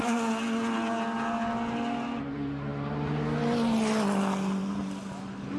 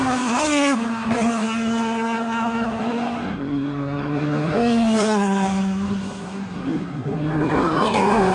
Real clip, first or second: first